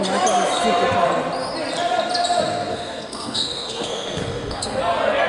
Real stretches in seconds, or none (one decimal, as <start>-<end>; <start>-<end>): 0.0-2.7; 4.8-5.3